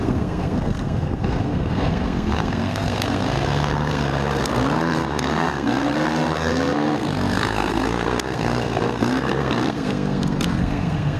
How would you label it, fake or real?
fake